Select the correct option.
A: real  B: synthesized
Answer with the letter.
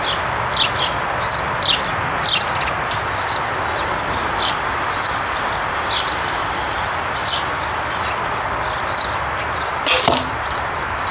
A